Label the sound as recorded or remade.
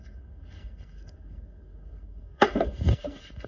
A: remade